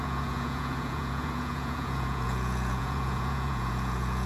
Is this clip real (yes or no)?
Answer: no